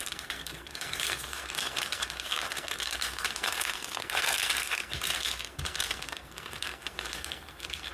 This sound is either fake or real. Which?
fake